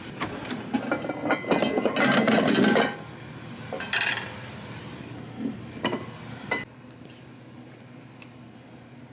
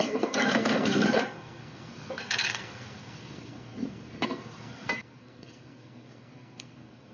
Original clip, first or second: first